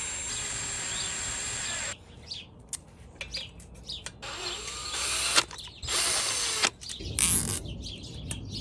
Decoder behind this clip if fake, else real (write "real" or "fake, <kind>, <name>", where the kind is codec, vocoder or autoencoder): real